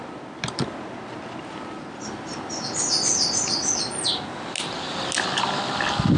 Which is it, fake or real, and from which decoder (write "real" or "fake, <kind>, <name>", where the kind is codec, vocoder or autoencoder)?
real